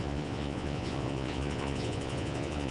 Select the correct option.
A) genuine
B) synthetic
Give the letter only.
B